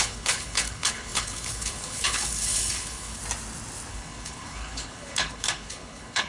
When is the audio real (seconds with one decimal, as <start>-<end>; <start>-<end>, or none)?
3.2-3.9